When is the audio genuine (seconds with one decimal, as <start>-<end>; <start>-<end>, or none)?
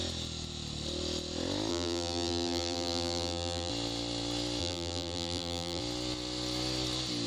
0.0-1.7; 3.7-4.6; 5.8-7.3